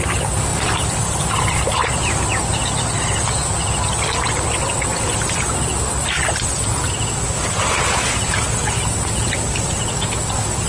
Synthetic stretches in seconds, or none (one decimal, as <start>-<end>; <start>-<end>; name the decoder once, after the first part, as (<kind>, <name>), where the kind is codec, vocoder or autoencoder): 0.5-1.2 (vocoder, BigVGAN v2)